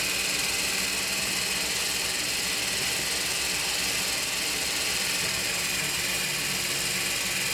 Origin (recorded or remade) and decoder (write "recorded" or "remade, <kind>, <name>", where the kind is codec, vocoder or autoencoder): recorded